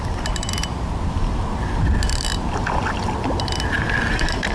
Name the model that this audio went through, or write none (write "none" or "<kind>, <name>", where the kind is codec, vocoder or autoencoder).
none